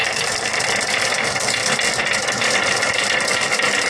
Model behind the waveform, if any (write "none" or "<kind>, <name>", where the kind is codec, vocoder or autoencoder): vocoder, BigVGAN v2